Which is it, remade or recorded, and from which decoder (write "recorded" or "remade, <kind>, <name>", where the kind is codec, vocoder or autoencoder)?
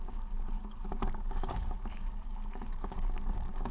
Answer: remade, codec, DAC